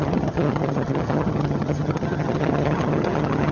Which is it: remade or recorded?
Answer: remade